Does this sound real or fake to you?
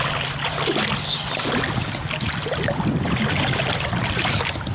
real